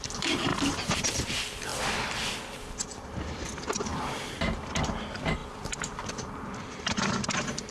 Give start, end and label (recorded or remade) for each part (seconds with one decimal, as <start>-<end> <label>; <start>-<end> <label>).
0.0-0.5 remade; 0.5-1.0 recorded; 1.0-7.7 remade